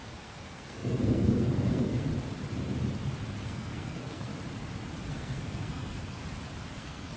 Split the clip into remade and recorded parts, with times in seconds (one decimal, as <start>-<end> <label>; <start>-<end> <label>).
0.0-2.1 remade; 2.1-3.4 recorded; 3.4-4.3 remade; 4.3-5.1 recorded; 5.1-6.2 remade; 6.2-6.7 recorded; 6.7-7.2 remade